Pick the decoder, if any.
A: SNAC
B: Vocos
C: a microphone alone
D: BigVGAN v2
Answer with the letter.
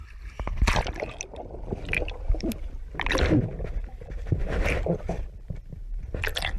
C